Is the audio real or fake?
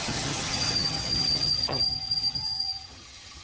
fake